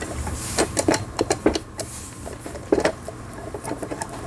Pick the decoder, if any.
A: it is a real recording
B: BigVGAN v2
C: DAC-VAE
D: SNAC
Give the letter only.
B